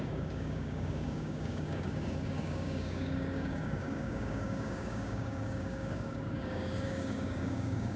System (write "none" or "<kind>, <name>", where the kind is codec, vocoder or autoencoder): codec, DAC